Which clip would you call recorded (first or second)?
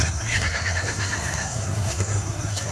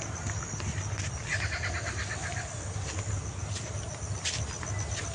second